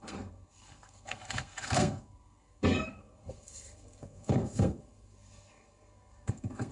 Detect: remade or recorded remade